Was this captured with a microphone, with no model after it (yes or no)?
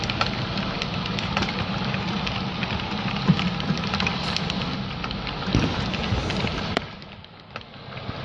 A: yes